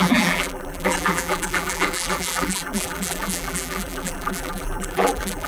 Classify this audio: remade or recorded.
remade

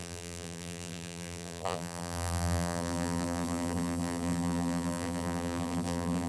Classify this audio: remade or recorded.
remade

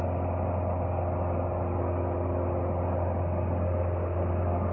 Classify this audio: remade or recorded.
recorded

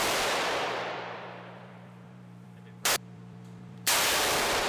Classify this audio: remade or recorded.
remade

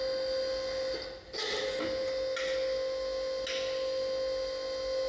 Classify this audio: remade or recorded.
recorded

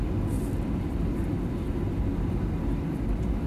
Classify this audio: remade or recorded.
remade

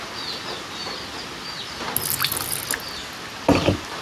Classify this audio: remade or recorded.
recorded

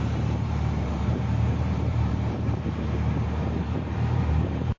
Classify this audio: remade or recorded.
remade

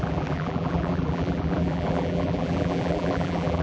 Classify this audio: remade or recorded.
remade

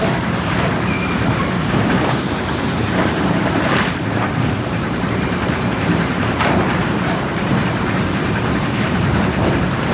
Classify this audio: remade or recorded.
remade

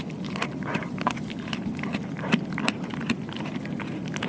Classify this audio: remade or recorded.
recorded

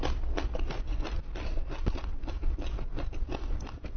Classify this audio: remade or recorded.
recorded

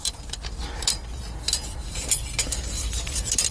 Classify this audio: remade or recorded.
recorded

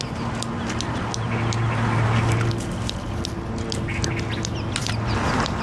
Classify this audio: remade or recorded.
recorded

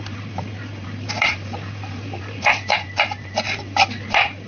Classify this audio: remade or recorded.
remade